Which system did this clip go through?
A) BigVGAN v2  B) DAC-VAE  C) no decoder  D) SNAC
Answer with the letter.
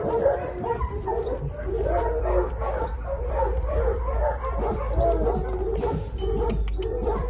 A